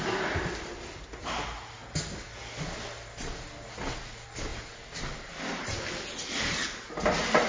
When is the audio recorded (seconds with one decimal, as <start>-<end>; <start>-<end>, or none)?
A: 0.0-7.5